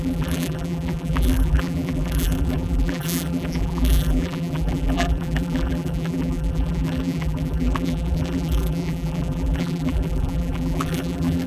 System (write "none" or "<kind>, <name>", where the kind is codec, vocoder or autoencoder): vocoder, BigVGAN v2